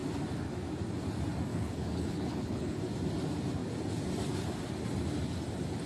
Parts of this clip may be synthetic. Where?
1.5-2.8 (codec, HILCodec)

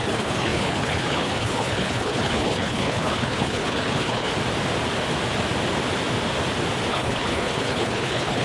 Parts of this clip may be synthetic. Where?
0.0-4.3 (codec, HILCodec); 6.9-8.4

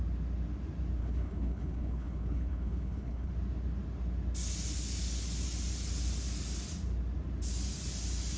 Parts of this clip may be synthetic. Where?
1.0-3.3 (codec, HILCodec)

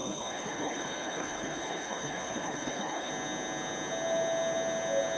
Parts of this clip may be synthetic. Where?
0.0-3.1 (codec, HILCodec)